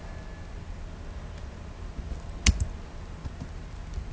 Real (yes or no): yes